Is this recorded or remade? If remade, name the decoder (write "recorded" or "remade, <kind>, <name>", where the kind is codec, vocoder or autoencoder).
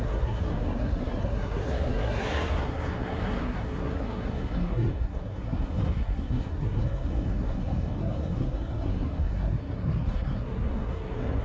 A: remade, codec, SNAC